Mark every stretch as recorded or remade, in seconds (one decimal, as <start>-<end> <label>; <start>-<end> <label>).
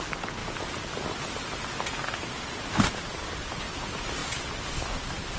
0.0-5.4 recorded